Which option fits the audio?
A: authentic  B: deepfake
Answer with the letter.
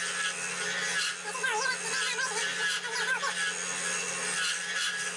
A